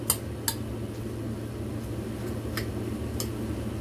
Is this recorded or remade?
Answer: recorded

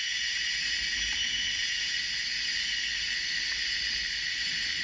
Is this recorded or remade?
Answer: recorded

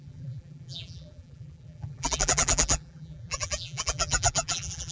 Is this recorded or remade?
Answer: remade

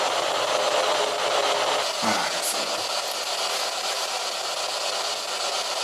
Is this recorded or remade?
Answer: recorded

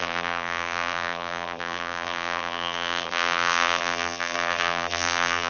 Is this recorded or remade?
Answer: remade